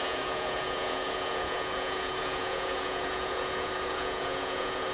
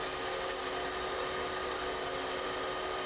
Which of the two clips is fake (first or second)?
first